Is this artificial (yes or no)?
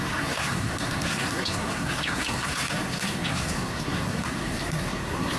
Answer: yes